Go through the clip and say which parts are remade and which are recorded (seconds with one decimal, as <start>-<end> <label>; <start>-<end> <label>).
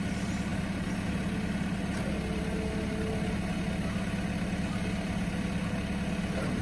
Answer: 0.0-6.6 recorded